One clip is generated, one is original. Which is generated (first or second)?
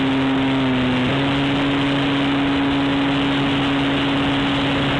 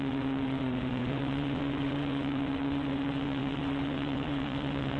second